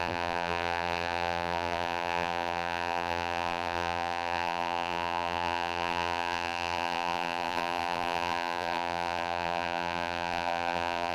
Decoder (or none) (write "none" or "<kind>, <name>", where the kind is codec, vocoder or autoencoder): vocoder, BigVGAN v2